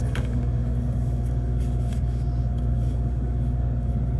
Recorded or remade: remade